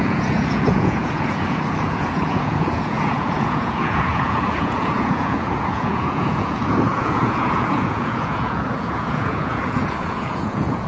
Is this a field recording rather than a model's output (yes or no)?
no